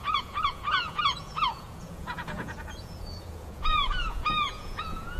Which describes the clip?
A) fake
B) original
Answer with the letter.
A